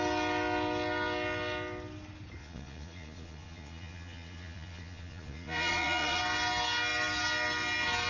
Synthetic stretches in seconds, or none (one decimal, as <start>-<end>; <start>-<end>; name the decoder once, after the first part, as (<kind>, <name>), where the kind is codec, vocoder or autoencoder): 2.4-6.2 (vocoder, Vocos)

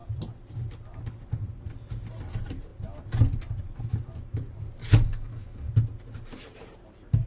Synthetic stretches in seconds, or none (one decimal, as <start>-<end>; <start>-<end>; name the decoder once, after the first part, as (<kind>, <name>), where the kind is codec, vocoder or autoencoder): 4.8-5.7 (codec, DAC)

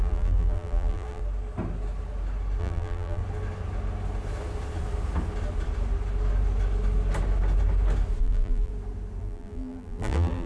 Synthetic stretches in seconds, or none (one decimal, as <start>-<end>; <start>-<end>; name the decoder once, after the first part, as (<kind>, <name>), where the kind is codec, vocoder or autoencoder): 0.0-1.2 (vocoder, BigVGAN v2); 2.6-3.2; 8.2-8.7; 9.2-10.5